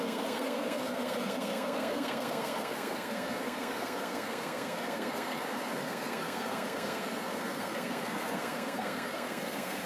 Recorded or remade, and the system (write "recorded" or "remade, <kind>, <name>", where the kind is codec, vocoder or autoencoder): remade, codec, SNAC